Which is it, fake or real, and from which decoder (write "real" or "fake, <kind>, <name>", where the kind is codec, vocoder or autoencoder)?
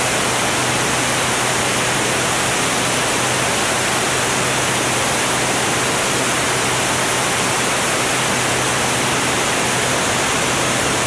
real